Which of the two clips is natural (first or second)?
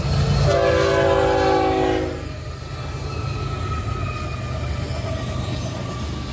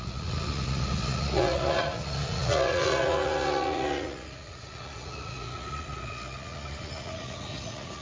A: first